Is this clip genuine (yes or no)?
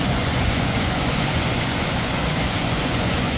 no